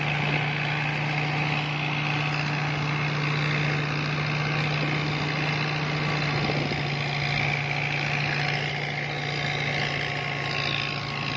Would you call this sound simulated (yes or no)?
no